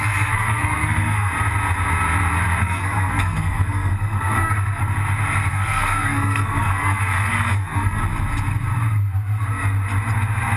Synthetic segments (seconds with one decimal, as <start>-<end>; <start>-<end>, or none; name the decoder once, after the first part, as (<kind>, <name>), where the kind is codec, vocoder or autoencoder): 0.0-1.3 (codec, SNAC); 2.6-4.8; 5.5-8.0